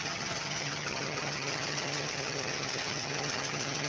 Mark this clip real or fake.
fake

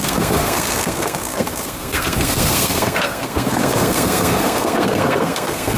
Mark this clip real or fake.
fake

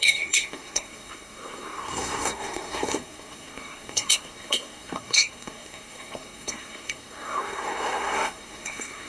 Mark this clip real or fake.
fake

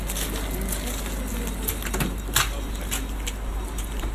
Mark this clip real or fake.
real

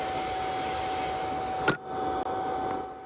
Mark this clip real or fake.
real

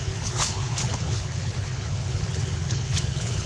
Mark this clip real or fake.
fake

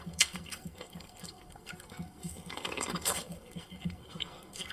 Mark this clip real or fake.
fake